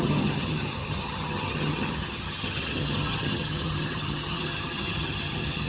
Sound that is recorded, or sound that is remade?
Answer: remade